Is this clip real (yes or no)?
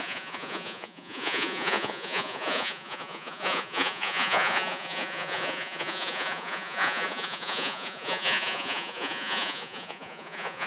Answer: no